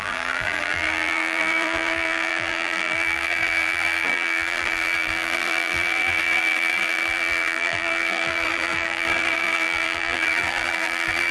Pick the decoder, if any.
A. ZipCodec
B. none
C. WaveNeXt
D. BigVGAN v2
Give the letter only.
D